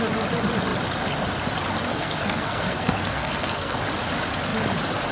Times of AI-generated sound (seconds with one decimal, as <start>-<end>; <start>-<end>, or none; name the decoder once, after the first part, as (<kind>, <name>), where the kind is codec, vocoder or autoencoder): 1.9-3.8 (codec, SNAC)